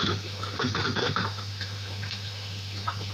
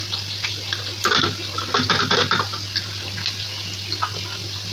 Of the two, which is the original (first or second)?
second